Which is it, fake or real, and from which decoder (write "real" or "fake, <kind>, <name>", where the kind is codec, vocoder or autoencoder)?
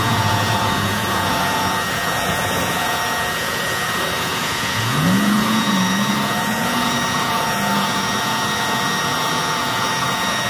fake, vocoder, Vocos